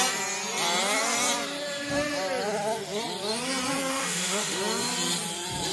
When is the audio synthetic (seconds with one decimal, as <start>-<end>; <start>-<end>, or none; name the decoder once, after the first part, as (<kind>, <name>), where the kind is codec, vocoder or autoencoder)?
3.9-4.6 (autoencoder, DAC-VAE)